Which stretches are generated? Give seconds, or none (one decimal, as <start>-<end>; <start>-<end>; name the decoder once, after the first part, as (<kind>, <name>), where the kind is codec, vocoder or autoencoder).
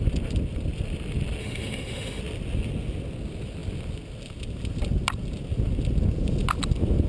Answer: 1.4-2.2 (autoencoder, DAC-VAE)